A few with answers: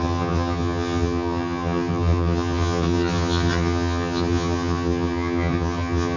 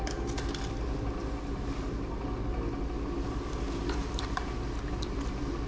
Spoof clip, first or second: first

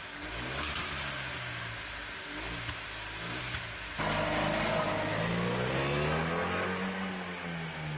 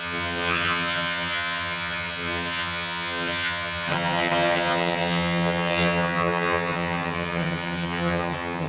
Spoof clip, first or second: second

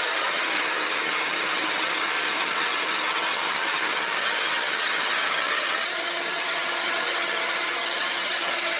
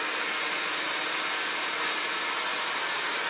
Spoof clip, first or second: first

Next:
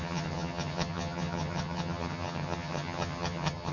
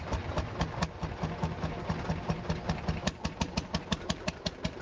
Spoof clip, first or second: first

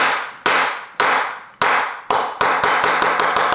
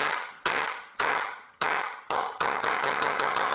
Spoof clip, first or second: second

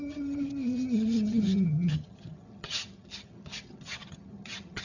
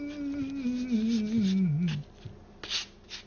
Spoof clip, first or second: first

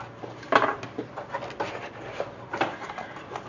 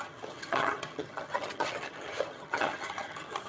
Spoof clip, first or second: second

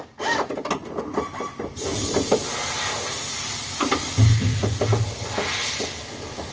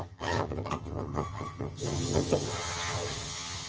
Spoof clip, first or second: second